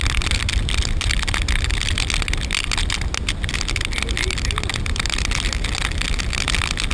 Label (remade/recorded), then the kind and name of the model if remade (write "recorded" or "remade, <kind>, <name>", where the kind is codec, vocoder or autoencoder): recorded